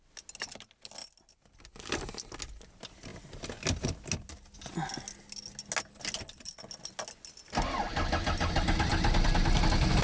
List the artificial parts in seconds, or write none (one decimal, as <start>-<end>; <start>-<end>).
none